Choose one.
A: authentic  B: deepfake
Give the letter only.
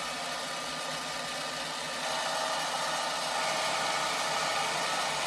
A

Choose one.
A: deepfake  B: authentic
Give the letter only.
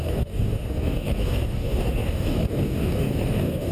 A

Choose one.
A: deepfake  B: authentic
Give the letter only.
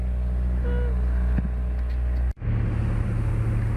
B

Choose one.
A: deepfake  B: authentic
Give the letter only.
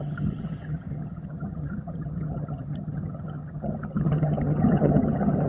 A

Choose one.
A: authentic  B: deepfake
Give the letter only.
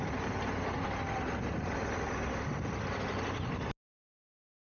A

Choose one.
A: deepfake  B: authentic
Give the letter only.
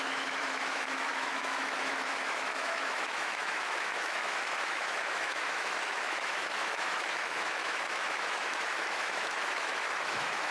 A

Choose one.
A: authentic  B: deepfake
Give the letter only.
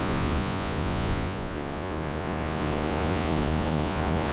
B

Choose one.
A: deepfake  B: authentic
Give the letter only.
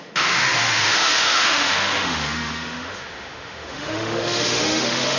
A